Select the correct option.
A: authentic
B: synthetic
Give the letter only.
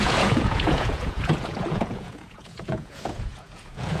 B